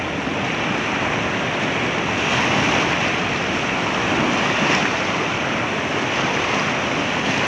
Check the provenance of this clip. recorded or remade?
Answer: recorded